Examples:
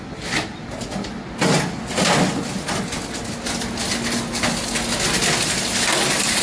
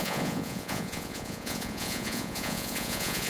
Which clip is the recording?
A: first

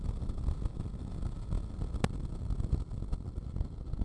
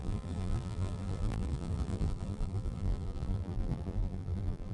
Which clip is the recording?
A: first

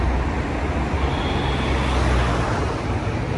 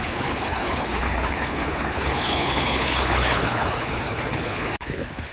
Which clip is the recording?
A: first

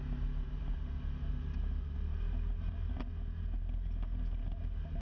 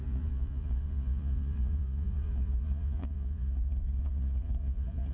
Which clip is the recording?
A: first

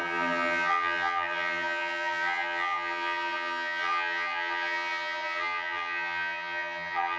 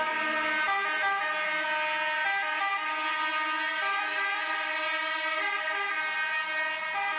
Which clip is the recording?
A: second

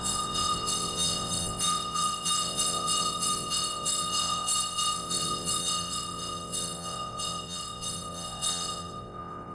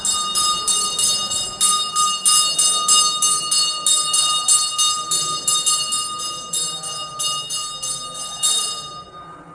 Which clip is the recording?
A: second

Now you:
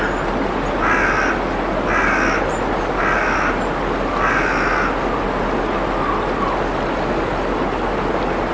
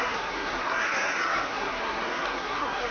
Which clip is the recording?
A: first